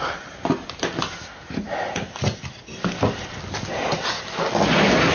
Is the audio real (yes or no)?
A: yes